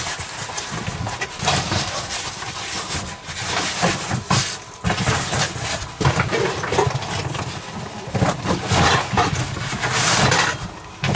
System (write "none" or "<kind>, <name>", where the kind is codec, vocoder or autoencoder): none